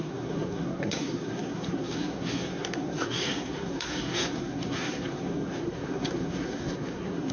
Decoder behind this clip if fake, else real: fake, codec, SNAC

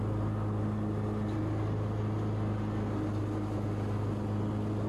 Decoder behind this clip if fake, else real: real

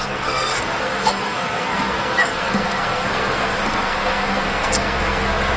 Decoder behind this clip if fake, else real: fake, codec, SNAC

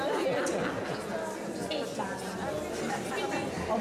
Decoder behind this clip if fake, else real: real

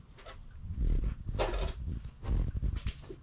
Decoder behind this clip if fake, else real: real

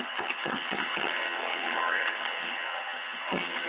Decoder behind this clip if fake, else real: fake, vocoder, HiFi-GAN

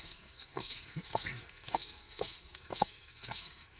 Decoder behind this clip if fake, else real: fake, codec, SNAC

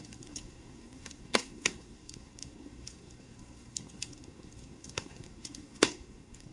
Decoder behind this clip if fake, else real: fake, codec, SNAC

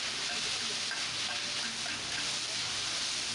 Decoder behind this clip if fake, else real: real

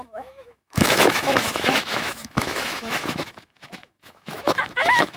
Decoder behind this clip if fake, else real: fake, autoencoder, DAC-VAE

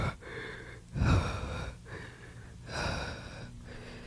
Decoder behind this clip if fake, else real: real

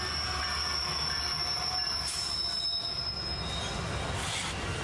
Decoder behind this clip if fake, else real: real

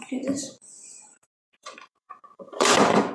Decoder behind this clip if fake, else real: fake, vocoder, Vocos